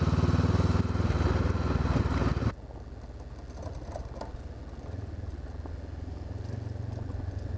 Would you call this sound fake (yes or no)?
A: no